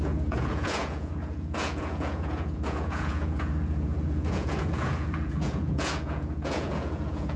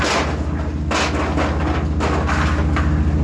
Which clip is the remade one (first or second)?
first